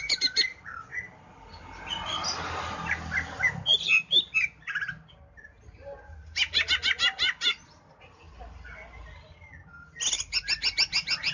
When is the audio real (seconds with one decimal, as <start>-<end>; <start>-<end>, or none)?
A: 0.0-11.3